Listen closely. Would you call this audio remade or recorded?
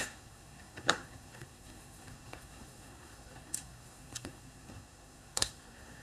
remade